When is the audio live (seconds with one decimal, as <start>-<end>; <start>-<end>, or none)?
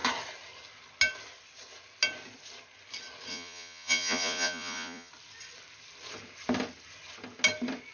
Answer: 0.0-3.3; 5.1-7.9